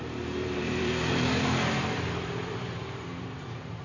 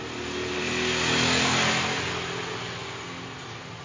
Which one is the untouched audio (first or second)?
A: second